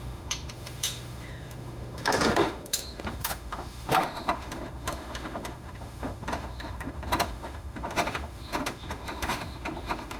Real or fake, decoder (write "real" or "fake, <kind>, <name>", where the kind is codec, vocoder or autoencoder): fake, autoencoder, DAC-VAE